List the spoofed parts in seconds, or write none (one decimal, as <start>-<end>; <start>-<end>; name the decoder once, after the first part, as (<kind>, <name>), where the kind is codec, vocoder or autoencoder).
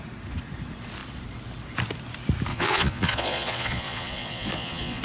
2.5-5.0 (vocoder, Vocos)